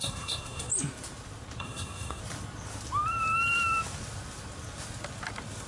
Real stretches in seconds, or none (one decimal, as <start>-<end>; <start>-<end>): 0.7-1.6; 2.2-5.7